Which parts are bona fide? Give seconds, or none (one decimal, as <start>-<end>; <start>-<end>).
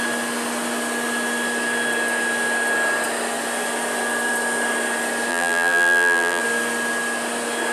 0.0-5.3; 6.4-7.7